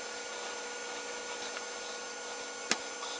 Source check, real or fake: real